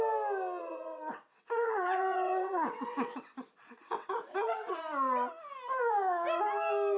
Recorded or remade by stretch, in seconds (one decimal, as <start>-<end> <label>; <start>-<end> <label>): 0.0-0.6 recorded; 0.6-4.8 remade; 4.8-7.0 recorded